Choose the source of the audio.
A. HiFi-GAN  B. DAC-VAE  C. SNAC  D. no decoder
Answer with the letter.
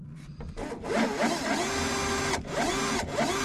D